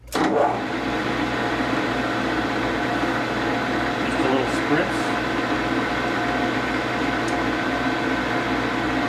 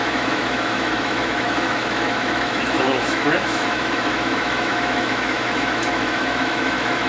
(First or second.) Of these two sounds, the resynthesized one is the second